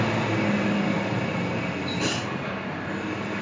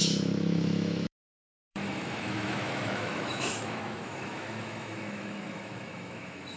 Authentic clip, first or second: first